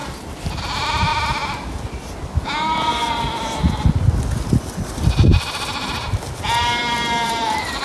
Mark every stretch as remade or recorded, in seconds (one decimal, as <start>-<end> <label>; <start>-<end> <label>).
0.0-0.6 recorded; 0.6-1.1 remade; 1.1-4.4 recorded; 4.4-6.8 remade; 6.8-7.8 recorded